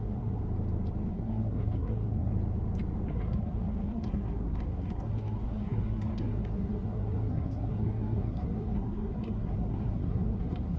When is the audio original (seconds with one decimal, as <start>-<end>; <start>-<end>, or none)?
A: 0.4-1.1; 2.3-3.1